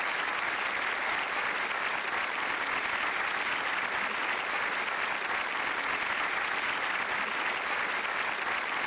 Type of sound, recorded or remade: recorded